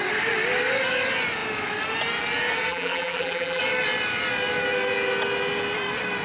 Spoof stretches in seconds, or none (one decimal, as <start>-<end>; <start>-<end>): 2.7-3.6